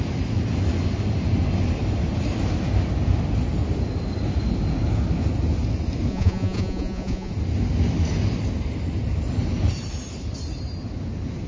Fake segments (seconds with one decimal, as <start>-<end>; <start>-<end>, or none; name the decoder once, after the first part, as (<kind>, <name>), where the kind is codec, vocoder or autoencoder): 6.1-7.3 (vocoder, Vocos)